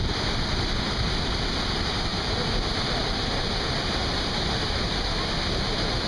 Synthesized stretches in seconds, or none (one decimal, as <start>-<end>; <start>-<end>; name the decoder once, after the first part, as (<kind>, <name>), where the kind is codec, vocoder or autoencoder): none